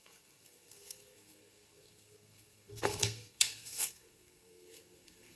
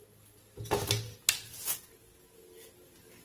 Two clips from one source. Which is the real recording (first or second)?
second